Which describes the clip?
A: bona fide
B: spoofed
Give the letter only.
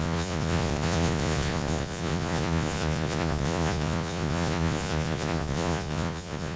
B